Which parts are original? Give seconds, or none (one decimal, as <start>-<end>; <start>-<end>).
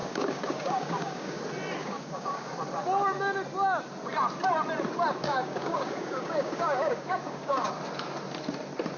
1.4-1.8; 2.5-5.2; 7.7-9.0